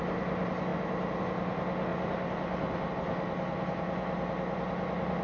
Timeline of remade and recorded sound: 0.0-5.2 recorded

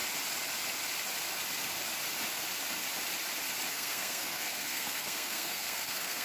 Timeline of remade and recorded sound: 0.0-3.7 recorded; 3.7-6.2 remade

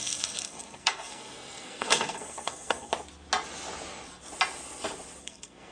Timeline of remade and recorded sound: 0.0-2.9 remade; 2.9-5.2 recorded; 5.2-5.7 remade